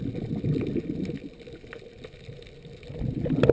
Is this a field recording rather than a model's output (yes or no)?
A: yes